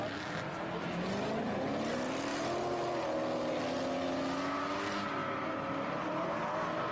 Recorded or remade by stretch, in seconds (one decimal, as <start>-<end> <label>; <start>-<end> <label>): 0.0-6.9 recorded